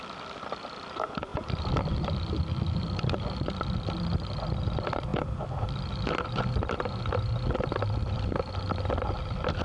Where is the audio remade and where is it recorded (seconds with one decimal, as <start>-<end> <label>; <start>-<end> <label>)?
0.0-9.6 recorded